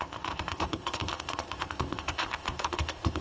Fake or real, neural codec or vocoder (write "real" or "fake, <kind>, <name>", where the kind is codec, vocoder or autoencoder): fake, codec, ZipCodec